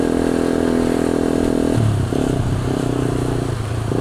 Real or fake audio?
real